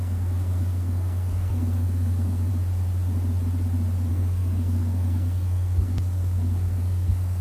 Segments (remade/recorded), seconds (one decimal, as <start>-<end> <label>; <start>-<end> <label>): 0.0-2.5 remade; 2.5-4.1 recorded; 4.1-7.4 remade